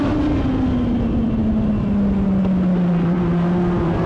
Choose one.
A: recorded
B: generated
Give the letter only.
A